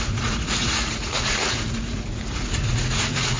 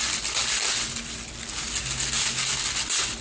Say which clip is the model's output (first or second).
first